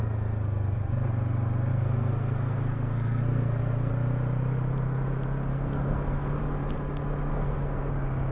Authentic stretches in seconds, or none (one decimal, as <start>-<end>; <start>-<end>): 0.0-1.7; 3.9-5.5; 6.4-7.3; 7.9-8.3